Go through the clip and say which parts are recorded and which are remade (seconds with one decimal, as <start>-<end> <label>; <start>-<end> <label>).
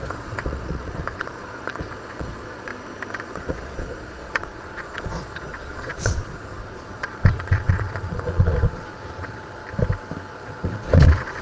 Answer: 0.0-2.7 remade; 2.7-3.2 recorded; 3.2-9.6 remade; 9.6-10.3 recorded; 10.3-11.4 remade